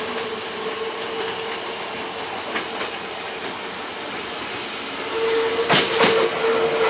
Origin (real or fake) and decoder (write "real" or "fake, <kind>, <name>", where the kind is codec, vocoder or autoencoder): real